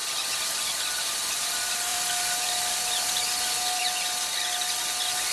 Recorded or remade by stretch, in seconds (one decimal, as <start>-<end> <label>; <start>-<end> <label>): 0.0-1.9 recorded; 1.9-3.2 remade; 3.2-5.3 recorded